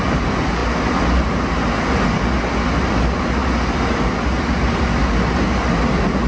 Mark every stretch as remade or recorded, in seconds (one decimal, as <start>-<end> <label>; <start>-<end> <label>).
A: 0.0-6.3 recorded